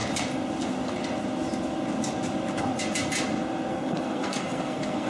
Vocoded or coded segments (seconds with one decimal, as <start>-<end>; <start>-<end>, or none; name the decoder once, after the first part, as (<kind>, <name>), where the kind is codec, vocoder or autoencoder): 3.7-5.1 (codec, SNAC)